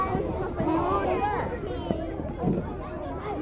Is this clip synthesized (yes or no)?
no